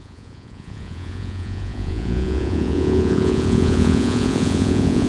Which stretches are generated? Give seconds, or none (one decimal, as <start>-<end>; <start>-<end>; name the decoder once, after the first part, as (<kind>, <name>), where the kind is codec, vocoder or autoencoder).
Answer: 0.0-5.1 (vocoder, Vocos)